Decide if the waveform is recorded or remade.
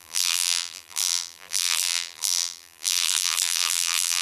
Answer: remade